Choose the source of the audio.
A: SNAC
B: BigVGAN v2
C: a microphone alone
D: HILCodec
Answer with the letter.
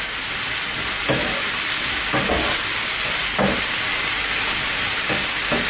C